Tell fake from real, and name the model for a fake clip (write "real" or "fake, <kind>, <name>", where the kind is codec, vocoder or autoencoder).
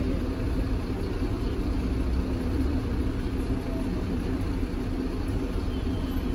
real